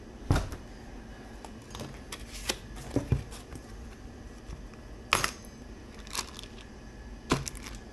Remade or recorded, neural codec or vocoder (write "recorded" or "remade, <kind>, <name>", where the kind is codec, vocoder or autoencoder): recorded